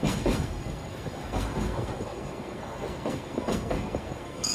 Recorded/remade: remade